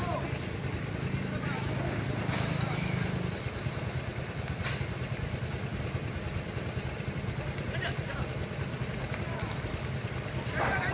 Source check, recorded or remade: recorded